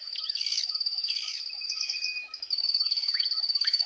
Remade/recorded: remade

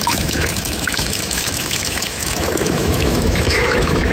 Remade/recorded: remade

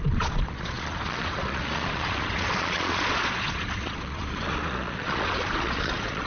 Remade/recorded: remade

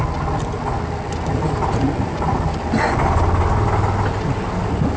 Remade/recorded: recorded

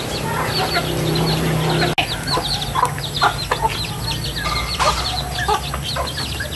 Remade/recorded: recorded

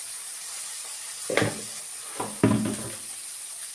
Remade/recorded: recorded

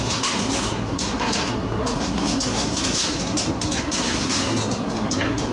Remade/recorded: remade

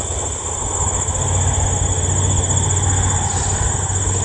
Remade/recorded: recorded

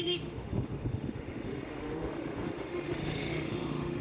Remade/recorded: remade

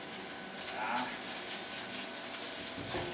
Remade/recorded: recorded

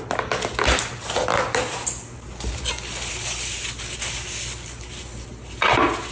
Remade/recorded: recorded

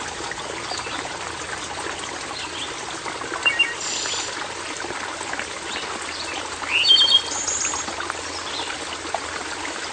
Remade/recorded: recorded